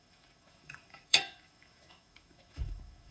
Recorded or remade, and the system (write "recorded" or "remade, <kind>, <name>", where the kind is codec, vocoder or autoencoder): remade, autoencoder, DAC-VAE